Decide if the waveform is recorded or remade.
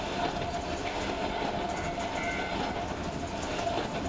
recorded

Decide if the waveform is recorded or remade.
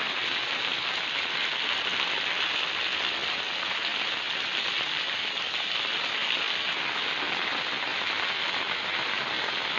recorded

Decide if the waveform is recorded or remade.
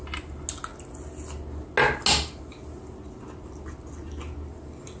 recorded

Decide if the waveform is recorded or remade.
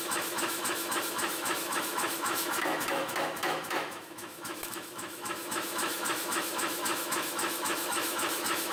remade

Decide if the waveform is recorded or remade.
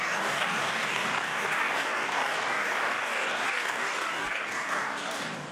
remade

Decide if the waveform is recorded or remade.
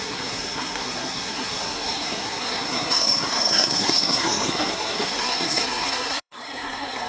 remade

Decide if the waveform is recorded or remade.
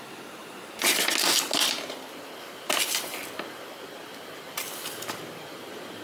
recorded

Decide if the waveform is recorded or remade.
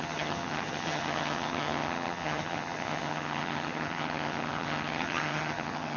remade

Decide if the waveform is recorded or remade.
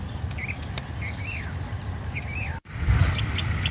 recorded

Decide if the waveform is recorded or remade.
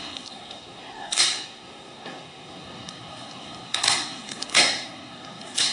remade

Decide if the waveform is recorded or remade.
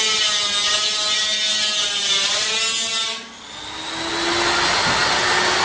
recorded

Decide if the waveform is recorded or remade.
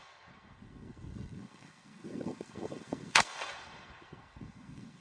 remade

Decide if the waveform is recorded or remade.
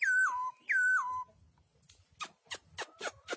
recorded